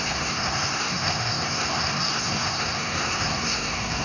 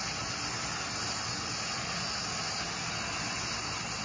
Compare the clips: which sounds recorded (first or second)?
second